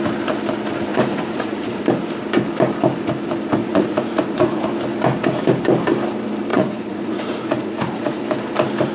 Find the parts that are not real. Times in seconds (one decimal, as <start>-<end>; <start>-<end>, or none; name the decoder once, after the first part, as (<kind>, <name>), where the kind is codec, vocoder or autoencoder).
0.9-1.8 (vocoder, Vocos); 3.6-4.7; 6.5-8.2